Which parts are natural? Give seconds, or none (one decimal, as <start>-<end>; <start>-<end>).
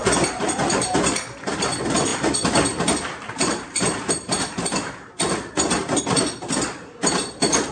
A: 0.0-7.7